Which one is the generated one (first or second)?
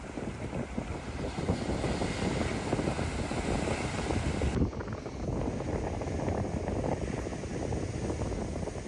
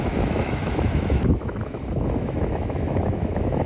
second